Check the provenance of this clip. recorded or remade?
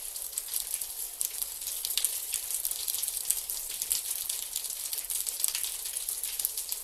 recorded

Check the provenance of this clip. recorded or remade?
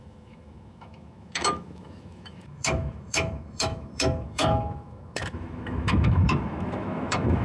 remade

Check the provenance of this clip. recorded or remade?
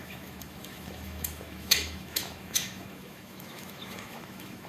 remade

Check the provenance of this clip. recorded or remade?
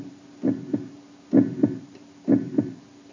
recorded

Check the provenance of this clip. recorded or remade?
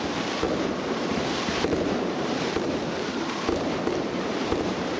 remade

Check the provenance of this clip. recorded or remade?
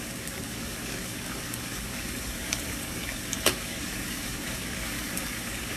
remade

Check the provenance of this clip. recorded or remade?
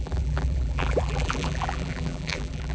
remade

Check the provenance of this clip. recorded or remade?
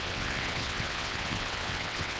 remade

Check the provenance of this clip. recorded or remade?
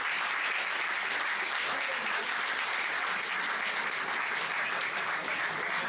recorded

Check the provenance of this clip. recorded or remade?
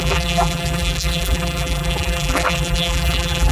remade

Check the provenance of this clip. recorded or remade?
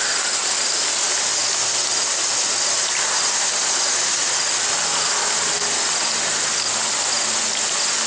recorded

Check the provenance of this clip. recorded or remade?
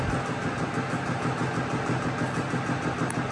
recorded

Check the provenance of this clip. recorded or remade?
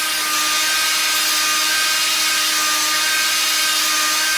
recorded